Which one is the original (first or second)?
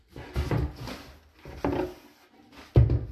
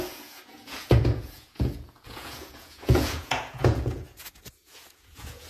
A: first